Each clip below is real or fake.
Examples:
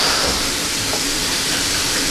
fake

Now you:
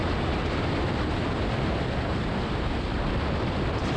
fake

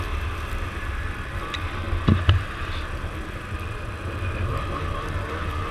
fake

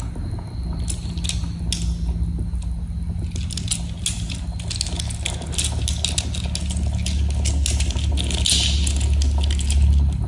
real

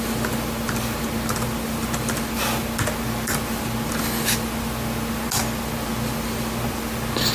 real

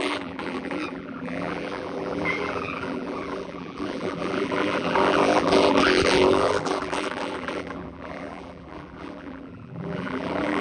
fake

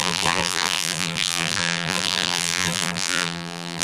fake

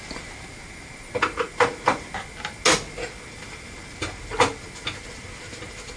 real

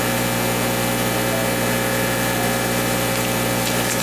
real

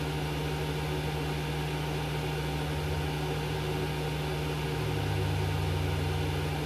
real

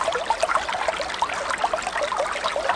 real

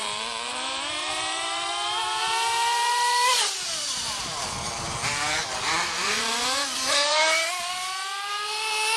fake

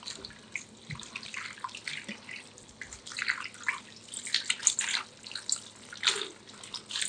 real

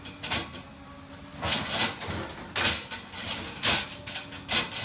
real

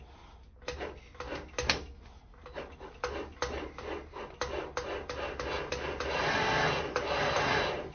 real